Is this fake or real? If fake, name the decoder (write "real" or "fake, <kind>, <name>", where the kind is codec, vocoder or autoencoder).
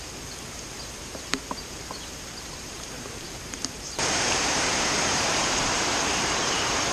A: fake, vocoder, BigVGAN v2